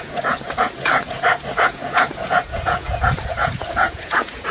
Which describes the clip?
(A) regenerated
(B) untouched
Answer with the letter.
A